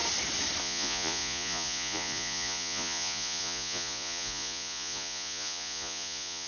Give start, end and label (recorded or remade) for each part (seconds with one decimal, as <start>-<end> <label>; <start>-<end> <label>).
0.0-0.6 recorded; 0.6-6.5 remade